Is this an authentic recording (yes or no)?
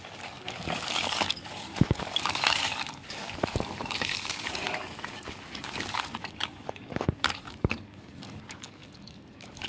no